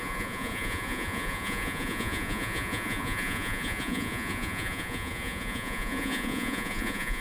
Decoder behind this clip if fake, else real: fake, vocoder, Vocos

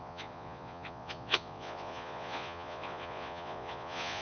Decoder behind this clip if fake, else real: fake, vocoder, Vocos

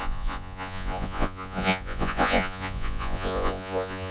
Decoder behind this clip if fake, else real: fake, vocoder, Vocos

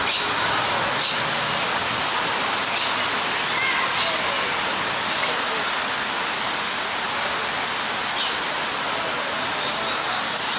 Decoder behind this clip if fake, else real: real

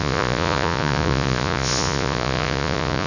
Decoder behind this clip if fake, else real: fake, vocoder, Vocos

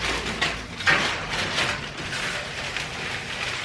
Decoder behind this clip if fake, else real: real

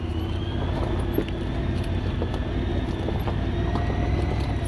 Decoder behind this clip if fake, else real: real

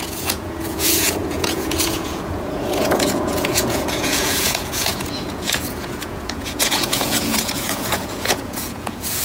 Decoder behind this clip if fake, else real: fake, vocoder, Vocos